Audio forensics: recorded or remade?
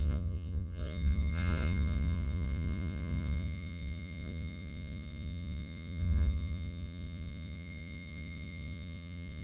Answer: remade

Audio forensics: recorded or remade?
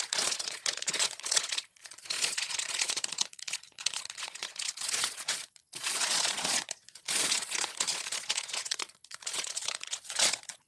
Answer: remade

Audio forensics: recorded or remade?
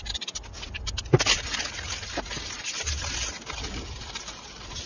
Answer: recorded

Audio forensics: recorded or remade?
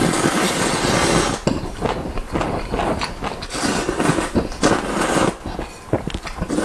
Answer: recorded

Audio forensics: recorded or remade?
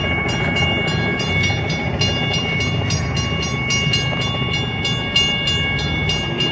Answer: recorded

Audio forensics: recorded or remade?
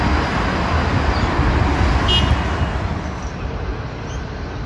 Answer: recorded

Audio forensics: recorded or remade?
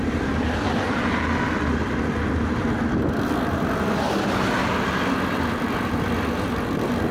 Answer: recorded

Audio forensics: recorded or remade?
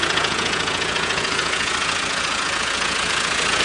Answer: remade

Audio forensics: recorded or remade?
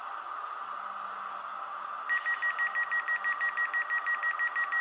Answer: recorded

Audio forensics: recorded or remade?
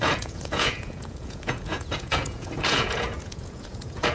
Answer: remade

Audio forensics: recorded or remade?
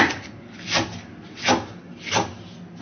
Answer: recorded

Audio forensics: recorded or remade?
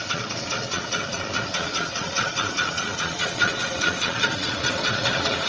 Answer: remade